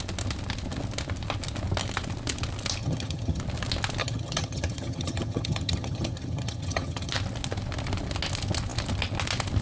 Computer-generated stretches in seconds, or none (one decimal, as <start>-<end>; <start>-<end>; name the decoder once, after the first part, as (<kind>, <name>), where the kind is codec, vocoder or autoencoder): 2.8-3.4 (vocoder, HiFi-GAN); 4.0-7.1